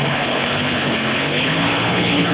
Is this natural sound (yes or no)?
no